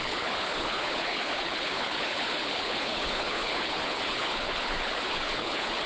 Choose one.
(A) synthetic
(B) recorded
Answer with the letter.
A